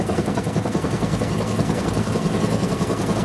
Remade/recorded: remade